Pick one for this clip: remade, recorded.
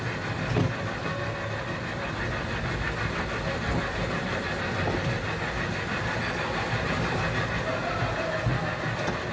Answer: recorded